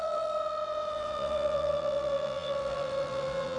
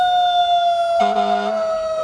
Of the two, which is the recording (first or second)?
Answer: second